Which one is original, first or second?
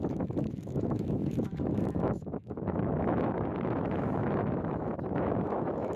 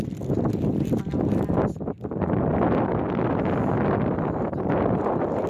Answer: second